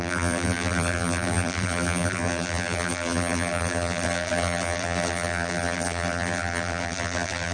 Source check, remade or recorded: remade